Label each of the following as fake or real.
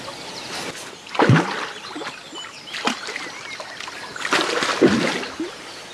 real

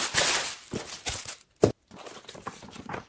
real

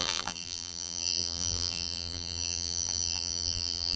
fake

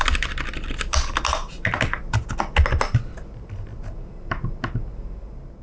real